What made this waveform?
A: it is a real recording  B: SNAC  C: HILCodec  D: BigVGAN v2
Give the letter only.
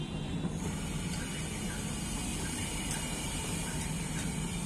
A